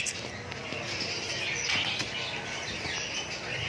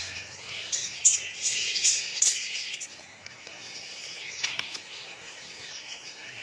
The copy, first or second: second